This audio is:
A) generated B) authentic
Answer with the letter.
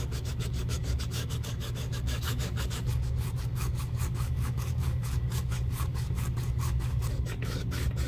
A